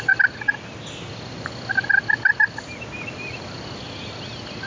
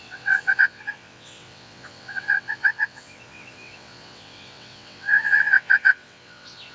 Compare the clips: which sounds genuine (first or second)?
first